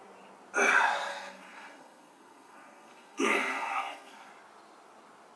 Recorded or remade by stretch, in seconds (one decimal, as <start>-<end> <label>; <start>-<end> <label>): 0.0-1.1 recorded; 1.1-4.3 remade; 4.3-5.4 recorded